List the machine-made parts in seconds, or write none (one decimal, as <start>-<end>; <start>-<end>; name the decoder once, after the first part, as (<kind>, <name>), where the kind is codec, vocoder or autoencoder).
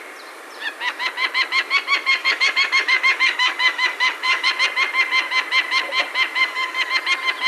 2.2-4.5 (codec, DAC); 6.4-6.9